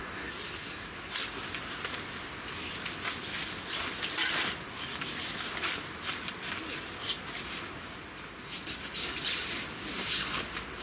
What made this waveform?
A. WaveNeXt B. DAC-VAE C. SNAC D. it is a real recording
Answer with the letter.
D